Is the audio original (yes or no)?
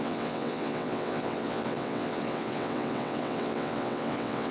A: no